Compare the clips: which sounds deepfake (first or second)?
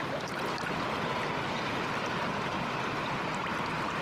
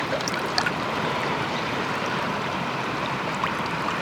second